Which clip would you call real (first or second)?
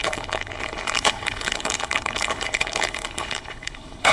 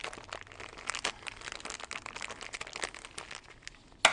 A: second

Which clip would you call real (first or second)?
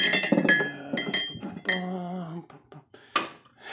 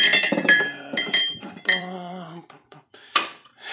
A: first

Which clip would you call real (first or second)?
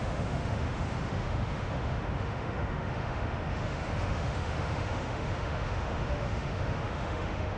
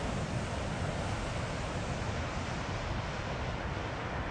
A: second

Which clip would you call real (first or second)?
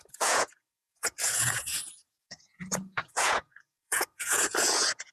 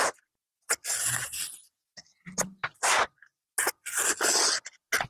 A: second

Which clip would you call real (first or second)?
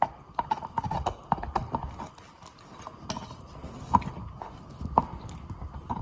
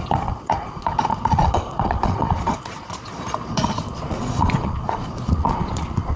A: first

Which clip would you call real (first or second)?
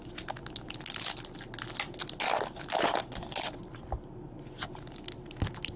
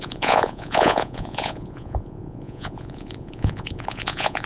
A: first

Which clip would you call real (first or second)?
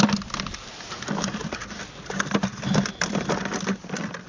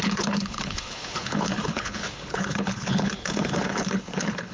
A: first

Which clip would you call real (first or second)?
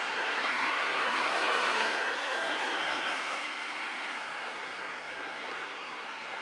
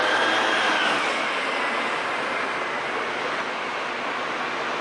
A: second